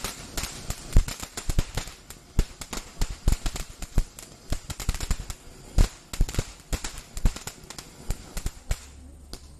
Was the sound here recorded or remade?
recorded